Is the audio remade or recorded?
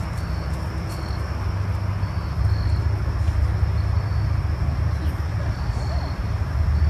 recorded